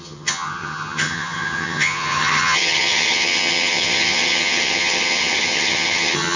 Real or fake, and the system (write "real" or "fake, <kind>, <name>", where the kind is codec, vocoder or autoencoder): fake, vocoder, HiFi-GAN